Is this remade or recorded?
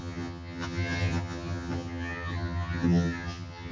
remade